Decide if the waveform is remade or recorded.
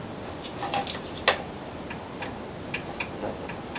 recorded